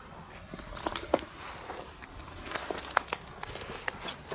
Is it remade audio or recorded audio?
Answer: recorded